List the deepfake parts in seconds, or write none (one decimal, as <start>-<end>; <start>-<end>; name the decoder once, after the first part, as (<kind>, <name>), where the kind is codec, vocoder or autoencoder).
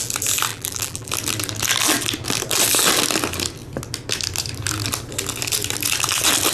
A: 0.5-1.1 (vocoder, BigVGAN v2)